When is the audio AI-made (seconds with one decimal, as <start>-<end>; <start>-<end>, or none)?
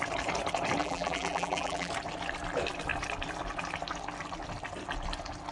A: 0.8-1.9